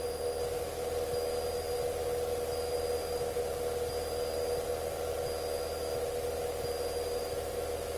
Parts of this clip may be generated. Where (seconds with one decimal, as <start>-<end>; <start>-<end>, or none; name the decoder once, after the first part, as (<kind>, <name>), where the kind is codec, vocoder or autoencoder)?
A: none